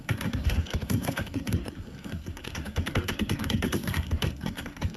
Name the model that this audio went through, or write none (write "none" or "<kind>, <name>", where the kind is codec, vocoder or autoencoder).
codec, SNAC